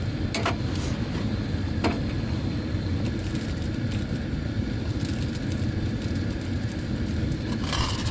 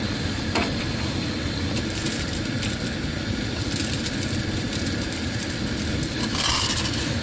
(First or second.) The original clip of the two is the first